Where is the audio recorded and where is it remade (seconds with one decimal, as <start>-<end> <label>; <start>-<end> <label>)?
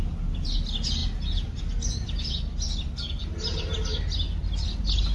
0.0-5.1 recorded